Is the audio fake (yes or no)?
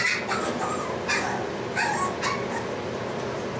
no